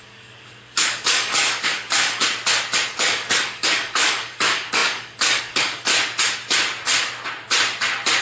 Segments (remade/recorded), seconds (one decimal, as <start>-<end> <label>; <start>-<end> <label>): 0.0-2.2 remade; 2.2-2.9 recorded; 2.9-5.9 remade; 5.9-8.2 recorded